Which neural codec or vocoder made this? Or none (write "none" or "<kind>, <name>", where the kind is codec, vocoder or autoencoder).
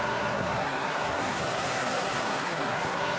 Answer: codec, SNAC